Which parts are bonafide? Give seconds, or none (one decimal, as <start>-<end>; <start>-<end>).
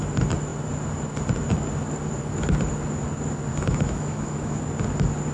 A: 0.0-3.5; 4.6-5.3